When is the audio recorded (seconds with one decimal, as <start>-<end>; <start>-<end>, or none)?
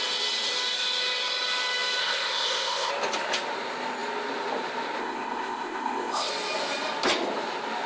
0.0-2.0; 2.9-5.0; 6.3-7.9